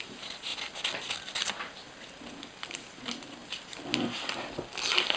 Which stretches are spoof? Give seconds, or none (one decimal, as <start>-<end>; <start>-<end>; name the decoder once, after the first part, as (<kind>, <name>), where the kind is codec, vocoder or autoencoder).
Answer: none